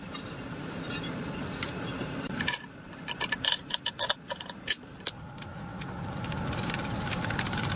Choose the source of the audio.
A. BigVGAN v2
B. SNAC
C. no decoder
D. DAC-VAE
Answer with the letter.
A